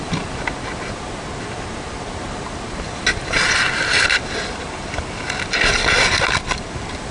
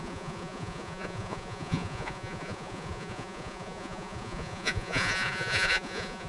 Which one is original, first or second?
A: first